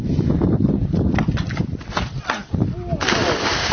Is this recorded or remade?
recorded